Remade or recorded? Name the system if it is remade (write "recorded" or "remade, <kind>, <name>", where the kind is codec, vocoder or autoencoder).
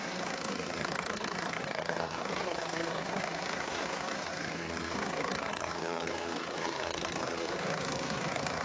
remade, codec, SNAC